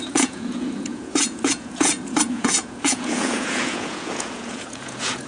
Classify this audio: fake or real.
fake